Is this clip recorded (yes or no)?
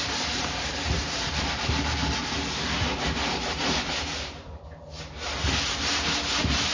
no